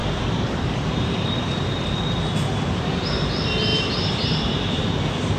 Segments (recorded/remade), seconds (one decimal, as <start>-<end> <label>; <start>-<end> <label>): 0.0-1.9 remade; 1.9-3.7 recorded; 3.7-4.8 remade; 4.8-5.4 recorded